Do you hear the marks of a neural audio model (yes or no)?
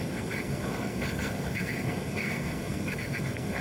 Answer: yes